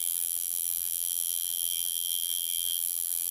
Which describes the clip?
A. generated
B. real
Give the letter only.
A